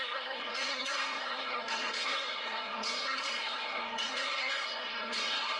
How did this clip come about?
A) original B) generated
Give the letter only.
B